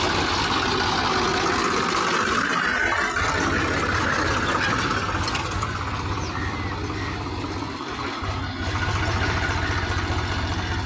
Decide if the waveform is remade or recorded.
recorded